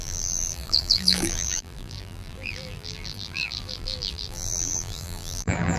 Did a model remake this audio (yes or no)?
yes